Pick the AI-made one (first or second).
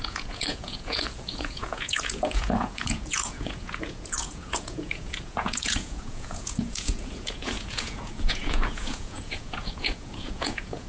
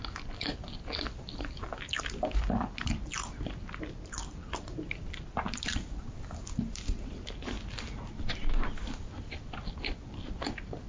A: first